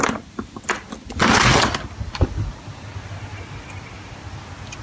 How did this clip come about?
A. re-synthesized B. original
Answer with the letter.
B